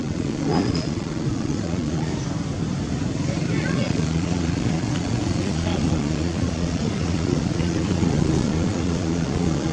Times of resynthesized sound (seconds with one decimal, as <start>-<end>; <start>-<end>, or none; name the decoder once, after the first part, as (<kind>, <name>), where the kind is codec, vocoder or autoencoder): 0.0-2.1 (vocoder, Vocos); 3.6-9.7